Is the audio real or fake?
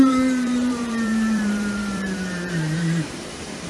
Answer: fake